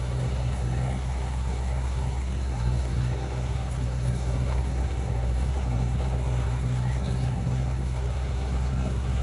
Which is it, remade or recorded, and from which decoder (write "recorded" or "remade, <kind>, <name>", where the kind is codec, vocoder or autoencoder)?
remade, codec, SNAC